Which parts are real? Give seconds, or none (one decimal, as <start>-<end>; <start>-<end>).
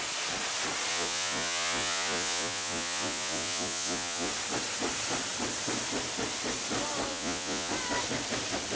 0.0-0.9; 4.3-7.1; 7.7-8.8